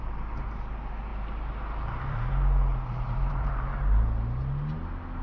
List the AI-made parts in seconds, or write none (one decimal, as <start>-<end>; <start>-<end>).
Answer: 2.9-3.8